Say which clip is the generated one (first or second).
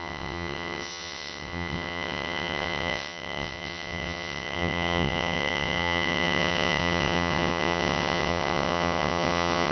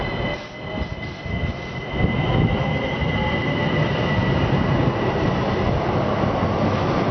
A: first